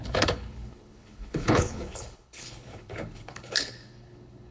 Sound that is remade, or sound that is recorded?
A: remade